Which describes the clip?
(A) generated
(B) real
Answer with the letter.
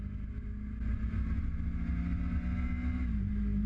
B